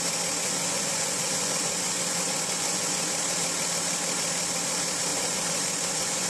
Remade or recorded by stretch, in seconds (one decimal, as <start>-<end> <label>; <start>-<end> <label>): 0.0-0.4 recorded; 0.4-3.1 remade; 3.1-5.1 recorded; 5.1-6.3 remade